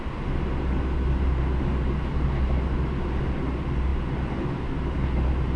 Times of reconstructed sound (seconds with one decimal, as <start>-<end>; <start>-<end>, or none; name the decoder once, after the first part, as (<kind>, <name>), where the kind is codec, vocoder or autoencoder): none